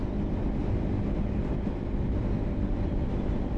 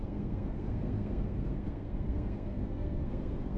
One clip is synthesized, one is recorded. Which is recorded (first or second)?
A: first